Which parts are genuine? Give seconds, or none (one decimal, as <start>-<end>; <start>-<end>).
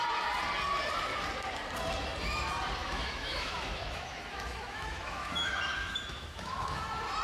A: 0.0-2.8; 6.8-7.2